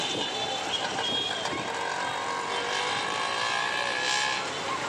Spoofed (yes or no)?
no